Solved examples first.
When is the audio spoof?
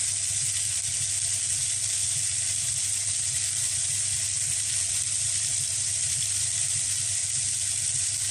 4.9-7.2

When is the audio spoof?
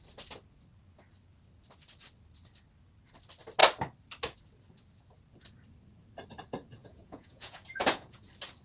6.8-8.2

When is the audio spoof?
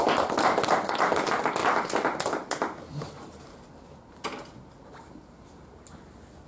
none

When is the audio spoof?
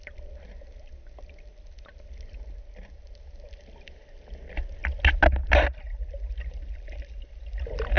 none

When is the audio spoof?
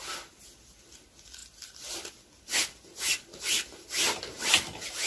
none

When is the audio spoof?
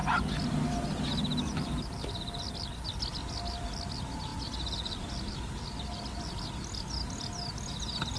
none